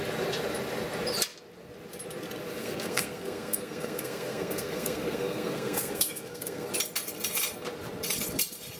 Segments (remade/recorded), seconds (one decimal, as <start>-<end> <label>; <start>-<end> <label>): 0.0-2.6 recorded; 2.6-6.7 remade; 6.7-8.8 recorded